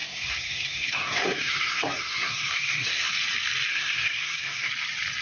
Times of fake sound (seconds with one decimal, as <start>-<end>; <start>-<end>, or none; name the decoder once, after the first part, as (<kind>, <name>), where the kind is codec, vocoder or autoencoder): 0.0-3.1 (codec, SNAC); 3.7-4.7